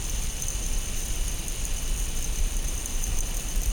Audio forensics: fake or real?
real